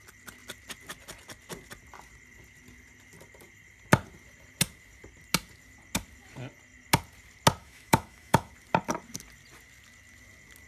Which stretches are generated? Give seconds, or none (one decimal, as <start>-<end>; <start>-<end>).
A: 7.6-8.5